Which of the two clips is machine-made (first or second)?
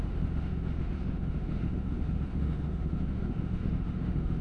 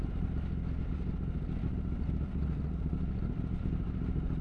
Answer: first